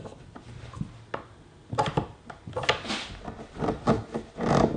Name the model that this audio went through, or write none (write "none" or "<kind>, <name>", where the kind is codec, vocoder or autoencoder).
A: none